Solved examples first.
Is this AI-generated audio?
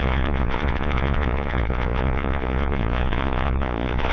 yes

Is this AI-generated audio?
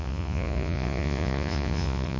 yes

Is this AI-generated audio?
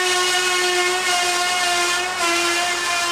no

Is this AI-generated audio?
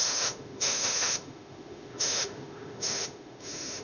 yes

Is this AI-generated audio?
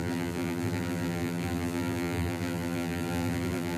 yes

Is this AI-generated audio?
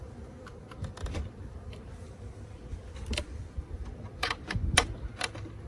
yes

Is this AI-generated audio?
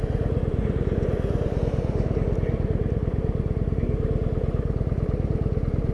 yes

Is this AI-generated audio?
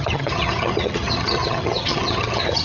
yes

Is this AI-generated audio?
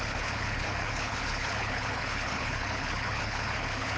yes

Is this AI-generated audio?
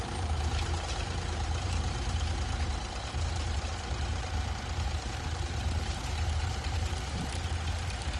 yes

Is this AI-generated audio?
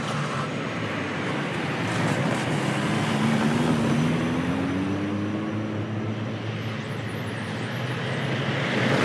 no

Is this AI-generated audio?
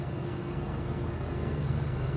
yes